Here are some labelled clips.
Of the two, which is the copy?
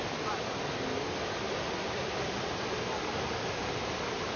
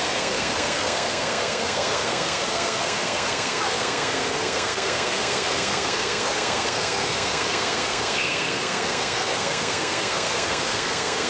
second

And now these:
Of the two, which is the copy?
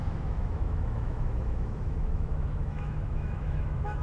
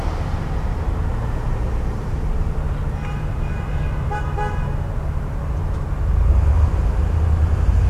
first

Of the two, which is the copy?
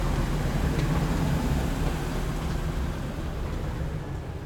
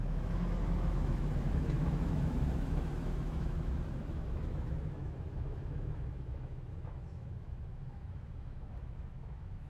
second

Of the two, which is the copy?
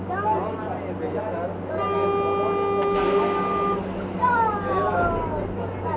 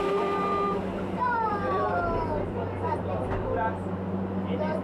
second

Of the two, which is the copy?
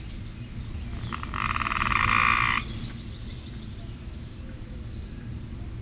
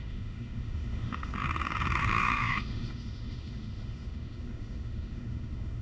second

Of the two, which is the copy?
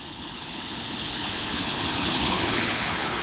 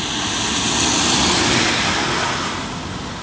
first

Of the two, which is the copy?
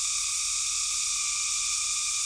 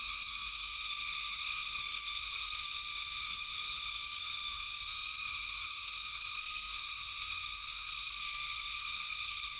second